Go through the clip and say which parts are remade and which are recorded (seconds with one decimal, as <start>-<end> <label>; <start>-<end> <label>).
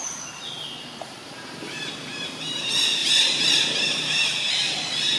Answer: 0.0-1.2 recorded; 1.2-1.9 remade; 1.9-3.0 recorded; 3.0-3.6 remade; 3.6-5.2 recorded